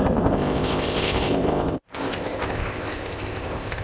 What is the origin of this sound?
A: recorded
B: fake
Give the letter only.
B